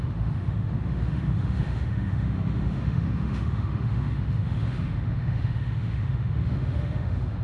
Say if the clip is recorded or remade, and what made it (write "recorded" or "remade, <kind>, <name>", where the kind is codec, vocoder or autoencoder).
remade, autoencoder, DAC-VAE